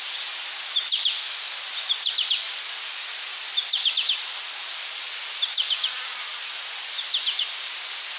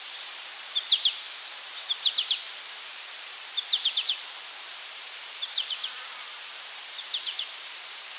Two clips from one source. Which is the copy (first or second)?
second